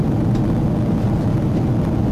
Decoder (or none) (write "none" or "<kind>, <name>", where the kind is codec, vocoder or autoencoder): none